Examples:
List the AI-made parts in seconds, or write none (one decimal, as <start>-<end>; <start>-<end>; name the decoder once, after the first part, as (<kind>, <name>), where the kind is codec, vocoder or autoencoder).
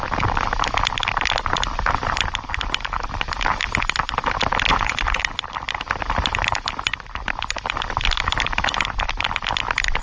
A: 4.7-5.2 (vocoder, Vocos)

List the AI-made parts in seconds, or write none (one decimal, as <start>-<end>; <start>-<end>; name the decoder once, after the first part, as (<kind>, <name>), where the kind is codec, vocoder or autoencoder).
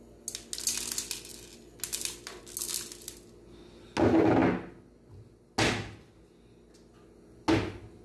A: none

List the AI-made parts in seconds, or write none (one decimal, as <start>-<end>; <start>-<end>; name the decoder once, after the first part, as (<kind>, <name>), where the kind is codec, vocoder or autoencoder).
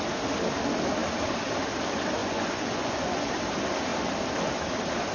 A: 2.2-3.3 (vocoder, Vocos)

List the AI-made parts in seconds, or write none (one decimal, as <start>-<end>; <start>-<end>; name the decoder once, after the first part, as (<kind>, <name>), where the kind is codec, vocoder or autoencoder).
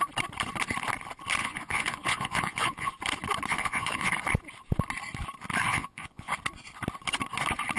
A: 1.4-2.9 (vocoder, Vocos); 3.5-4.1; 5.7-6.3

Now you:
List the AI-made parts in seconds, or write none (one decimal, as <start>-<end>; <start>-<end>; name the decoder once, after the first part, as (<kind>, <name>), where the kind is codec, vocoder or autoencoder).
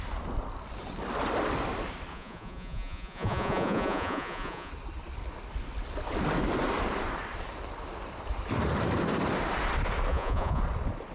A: 2.1-4.7 (vocoder, Vocos); 10.1-10.6